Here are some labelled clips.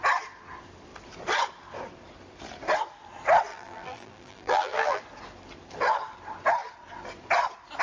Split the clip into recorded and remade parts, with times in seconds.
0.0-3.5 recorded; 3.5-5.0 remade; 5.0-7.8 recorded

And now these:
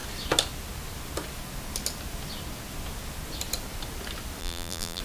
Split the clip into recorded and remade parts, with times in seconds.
0.0-4.4 recorded; 4.4-5.0 remade

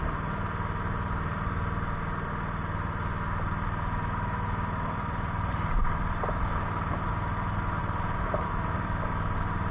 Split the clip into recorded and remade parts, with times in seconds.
0.0-7.8 recorded; 7.8-8.5 remade; 8.5-9.7 recorded

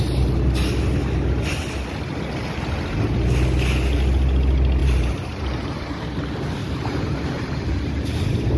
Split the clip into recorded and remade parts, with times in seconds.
0.0-4.8 recorded; 4.8-6.0 remade; 6.0-6.6 recorded; 6.6-8.6 remade